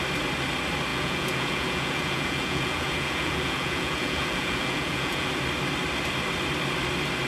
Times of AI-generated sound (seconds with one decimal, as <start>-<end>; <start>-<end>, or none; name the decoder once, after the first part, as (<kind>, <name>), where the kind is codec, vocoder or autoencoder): 0.9-5.3 (vocoder, Vocos)